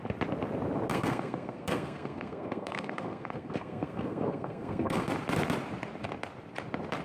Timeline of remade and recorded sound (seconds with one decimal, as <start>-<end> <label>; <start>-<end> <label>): 0.0-0.9 recorded; 0.9-5.1 remade; 5.1-7.0 recorded